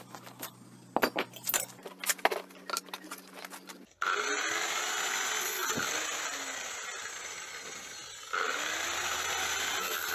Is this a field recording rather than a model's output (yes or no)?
yes